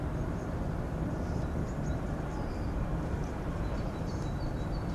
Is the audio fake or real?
fake